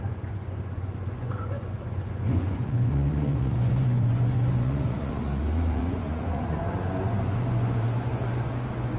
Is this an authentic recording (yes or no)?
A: no